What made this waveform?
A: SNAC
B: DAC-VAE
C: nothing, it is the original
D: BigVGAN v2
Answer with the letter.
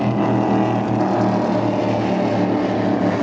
C